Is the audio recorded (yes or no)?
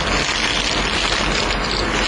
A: yes